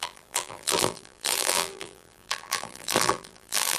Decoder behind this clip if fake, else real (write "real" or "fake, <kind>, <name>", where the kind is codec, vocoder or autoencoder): fake, vocoder, BigVGAN v2